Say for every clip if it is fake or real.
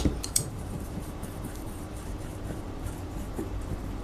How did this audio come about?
fake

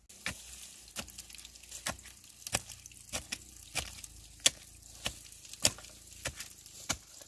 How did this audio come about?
real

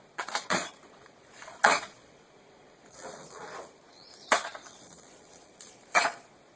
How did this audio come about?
fake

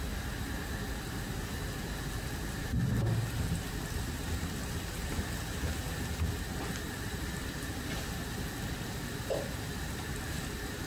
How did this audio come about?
real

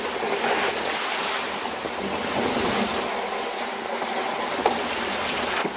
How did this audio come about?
real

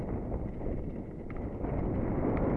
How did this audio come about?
real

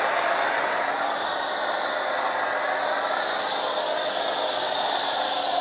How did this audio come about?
real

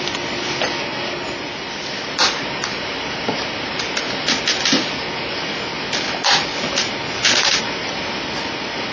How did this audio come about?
real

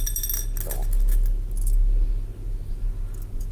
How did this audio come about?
real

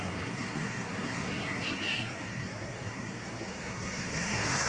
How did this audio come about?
fake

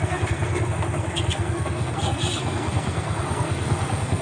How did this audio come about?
fake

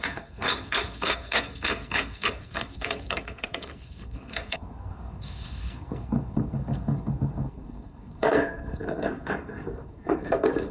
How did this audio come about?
fake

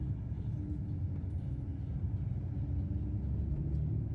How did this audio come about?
real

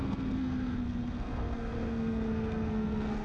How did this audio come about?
fake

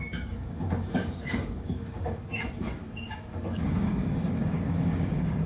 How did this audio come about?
fake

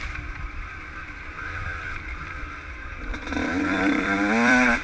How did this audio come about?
fake